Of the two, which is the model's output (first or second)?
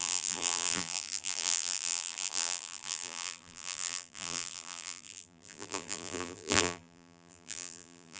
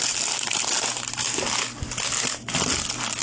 first